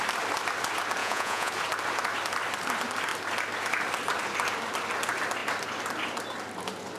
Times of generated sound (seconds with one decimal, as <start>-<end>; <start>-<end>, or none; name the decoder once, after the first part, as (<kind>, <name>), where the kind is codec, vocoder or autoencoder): 1.0-1.5 (vocoder, Vocos)

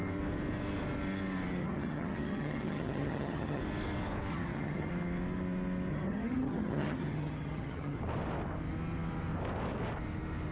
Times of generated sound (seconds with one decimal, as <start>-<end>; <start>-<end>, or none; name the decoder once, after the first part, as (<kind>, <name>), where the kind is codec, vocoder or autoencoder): 1.6-3.6 (vocoder, HiFi-GAN); 4.3-4.9; 5.9-8.0

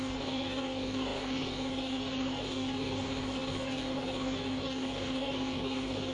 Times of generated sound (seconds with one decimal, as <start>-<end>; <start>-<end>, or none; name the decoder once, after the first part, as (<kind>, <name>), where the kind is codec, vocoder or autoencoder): 0.0-6.1 (codec, DAC)

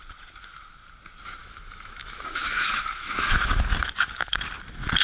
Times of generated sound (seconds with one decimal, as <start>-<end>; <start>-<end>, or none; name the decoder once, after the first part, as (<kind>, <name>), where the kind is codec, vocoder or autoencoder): 1.4-4.4 (autoencoder, DAC-VAE)